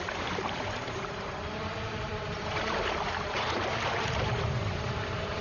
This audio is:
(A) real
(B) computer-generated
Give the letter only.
B